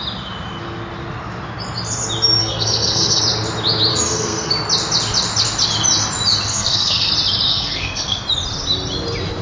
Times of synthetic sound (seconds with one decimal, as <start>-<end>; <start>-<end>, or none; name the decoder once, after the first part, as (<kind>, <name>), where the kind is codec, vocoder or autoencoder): 2.4-3.2 (codec, SNAC); 3.9-4.5; 6.5-7.1; 7.5-8.2